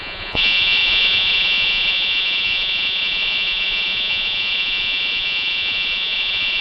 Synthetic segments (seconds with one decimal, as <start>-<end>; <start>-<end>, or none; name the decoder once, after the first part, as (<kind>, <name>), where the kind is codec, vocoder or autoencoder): 0.0-6.6 (vocoder, Vocos)